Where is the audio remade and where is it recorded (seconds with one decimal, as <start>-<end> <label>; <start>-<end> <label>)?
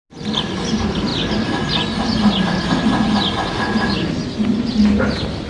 0.0-5.5 recorded